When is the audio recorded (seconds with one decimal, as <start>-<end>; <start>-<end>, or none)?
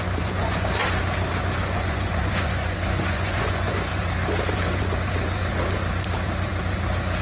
0.8-1.6; 3.9-7.2